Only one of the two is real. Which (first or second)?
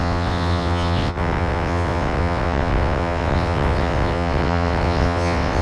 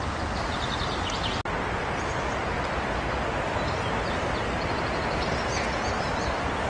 second